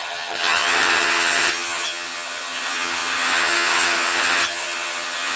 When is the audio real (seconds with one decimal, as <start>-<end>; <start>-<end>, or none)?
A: none